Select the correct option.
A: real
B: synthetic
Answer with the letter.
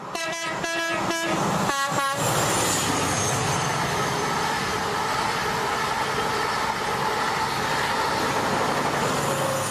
A